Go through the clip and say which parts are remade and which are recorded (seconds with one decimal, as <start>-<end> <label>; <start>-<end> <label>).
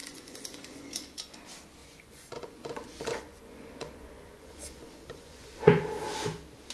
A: 0.0-1.4 remade; 1.4-1.8 recorded; 1.8-5.8 remade; 5.8-6.7 recorded